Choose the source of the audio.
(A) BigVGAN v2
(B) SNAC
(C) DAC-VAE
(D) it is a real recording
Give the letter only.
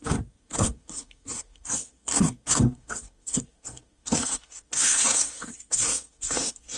B